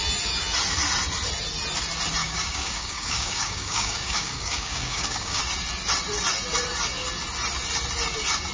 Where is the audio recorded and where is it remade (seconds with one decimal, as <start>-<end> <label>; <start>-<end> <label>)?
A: 0.0-2.2 recorded; 2.2-5.4 remade; 5.4-8.5 recorded